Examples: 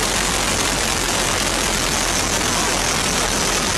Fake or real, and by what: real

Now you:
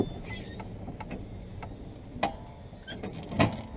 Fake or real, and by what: real